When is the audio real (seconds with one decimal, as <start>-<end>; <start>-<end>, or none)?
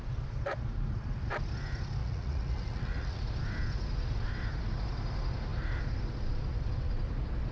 0.0-2.0; 3.2-7.5